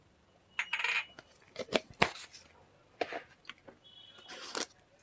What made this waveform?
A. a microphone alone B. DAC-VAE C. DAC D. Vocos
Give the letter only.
A